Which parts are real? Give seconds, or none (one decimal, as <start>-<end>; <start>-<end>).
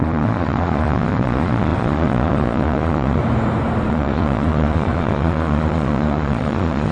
3.2-3.9